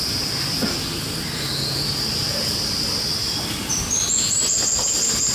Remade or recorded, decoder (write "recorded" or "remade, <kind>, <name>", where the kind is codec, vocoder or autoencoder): recorded